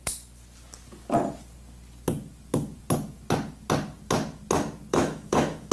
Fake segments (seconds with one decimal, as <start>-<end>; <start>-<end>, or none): 4.9-5.7

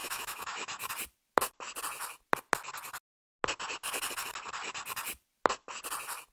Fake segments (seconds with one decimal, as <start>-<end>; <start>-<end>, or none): 0.0-0.9

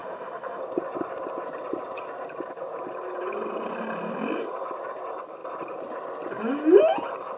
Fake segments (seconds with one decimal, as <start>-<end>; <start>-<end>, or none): 0.0-0.6

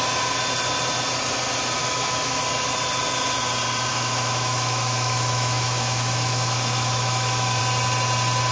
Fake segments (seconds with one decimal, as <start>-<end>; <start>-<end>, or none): 1.8-2.4; 3.9-7.6